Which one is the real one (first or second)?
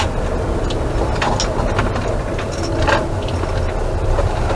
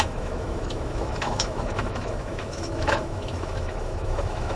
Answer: first